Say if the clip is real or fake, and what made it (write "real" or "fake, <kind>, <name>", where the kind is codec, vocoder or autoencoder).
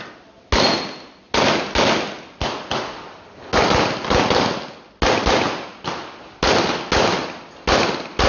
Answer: real